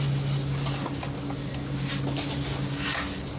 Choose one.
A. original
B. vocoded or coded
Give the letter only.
A